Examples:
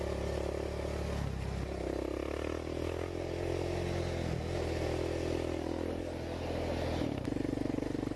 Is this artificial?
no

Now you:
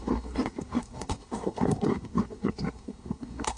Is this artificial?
yes